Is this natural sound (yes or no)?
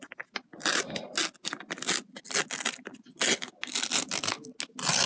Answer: yes